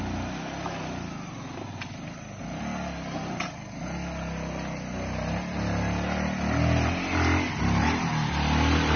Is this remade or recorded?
recorded